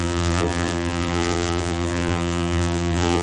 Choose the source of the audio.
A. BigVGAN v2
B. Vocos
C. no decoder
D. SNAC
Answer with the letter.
A